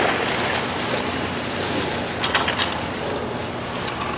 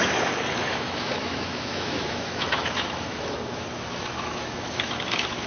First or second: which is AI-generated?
second